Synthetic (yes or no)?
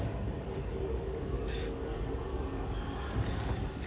yes